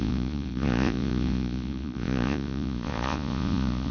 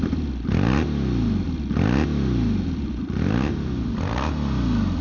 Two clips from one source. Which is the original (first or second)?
second